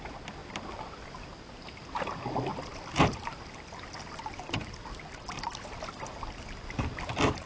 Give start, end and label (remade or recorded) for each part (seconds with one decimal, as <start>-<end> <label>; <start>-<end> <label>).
0.0-0.4 recorded; 0.4-1.3 remade; 1.3-2.5 recorded; 2.5-6.2 remade; 6.2-7.5 recorded